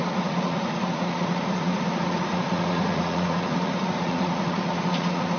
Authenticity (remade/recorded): remade